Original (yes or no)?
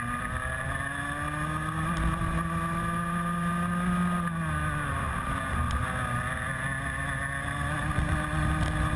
yes